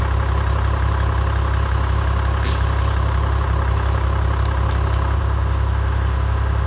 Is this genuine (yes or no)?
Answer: yes